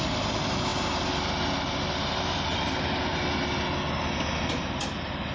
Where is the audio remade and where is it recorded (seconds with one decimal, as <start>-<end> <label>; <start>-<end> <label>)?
0.0-5.3 recorded